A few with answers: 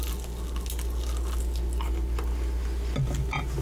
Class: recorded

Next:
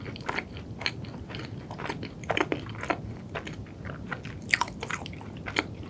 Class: recorded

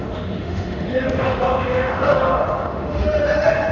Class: remade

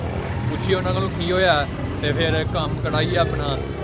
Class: remade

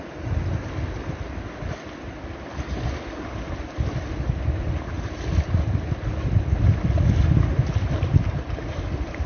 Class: recorded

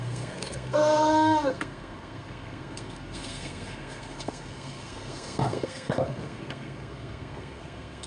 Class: remade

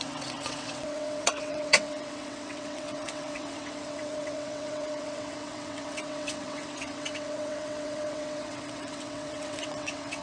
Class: remade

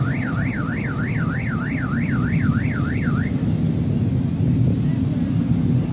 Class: recorded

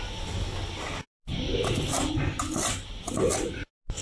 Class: recorded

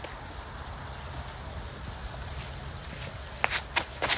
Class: recorded